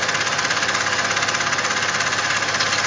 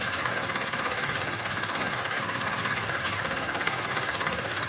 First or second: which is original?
first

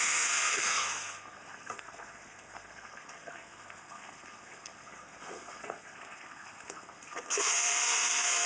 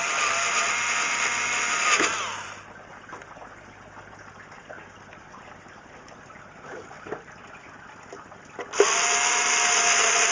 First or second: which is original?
second